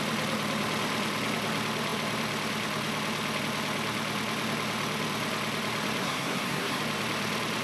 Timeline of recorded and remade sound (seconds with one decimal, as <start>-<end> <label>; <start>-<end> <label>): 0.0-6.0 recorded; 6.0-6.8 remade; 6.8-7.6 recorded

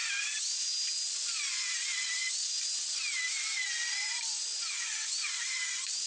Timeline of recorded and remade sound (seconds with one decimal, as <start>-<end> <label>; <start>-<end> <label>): 0.0-6.1 recorded

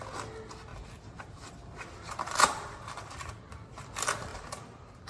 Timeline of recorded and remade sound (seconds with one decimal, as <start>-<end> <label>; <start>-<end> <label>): 0.0-0.7 recorded; 0.7-3.5 remade; 3.5-4.3 recorded; 4.3-5.1 remade